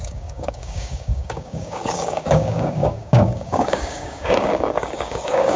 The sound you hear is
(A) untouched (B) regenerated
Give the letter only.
B